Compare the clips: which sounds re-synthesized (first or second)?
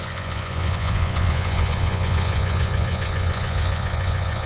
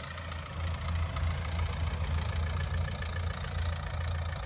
first